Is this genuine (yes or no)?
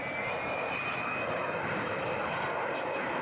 yes